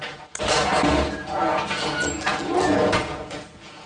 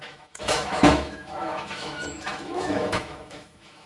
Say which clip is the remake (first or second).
second